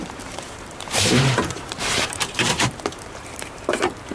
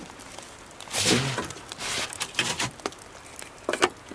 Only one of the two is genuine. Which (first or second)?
second